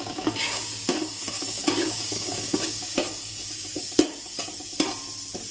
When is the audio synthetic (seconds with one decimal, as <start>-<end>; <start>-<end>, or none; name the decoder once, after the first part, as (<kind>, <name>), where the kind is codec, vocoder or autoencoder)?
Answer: 0.0-4.5 (codec, DAC)